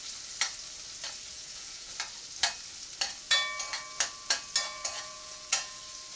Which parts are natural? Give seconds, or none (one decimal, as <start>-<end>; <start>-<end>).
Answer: 0.0-1.3; 1.9-4.6; 5.8-6.2